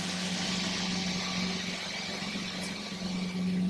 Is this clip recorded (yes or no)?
yes